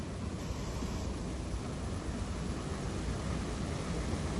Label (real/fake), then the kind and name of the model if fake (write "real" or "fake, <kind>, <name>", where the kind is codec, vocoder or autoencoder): real